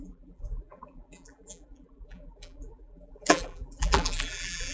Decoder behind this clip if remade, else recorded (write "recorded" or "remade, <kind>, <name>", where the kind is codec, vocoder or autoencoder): remade, vocoder, BigVGAN v2